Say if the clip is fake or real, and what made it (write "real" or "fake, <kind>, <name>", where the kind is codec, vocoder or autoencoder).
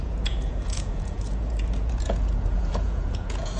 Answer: fake, vocoder, Vocos